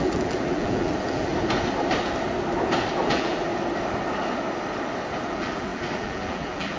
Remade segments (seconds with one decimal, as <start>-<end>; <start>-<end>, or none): 0.0-1.3; 3.1-3.5; 5.3-6.8